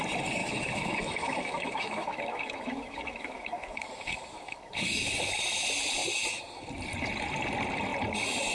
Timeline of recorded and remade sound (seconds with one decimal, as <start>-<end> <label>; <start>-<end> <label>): 0.0-0.4 recorded; 0.4-5.4 remade; 5.4-8.5 recorded